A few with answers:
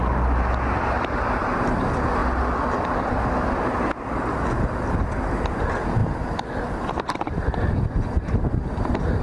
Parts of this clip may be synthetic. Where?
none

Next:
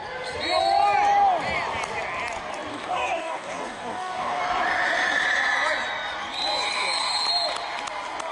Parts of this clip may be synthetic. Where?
2.7-4.4

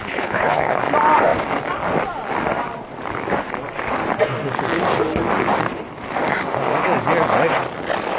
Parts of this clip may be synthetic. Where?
0.0-0.8

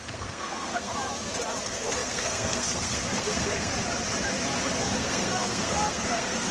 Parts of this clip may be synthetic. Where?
0.0-0.9; 1.6-3.7; 4.8-6.5

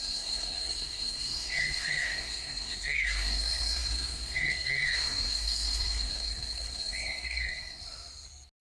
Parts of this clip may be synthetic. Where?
0.0-7.8

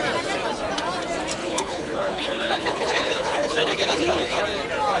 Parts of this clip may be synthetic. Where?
1.4-4.4

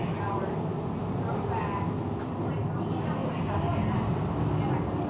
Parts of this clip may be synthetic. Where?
3.2-4.4

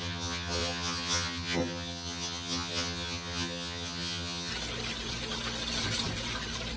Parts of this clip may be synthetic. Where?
0.0-4.5